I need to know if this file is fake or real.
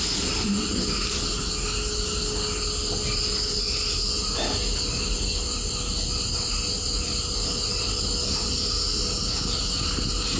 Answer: real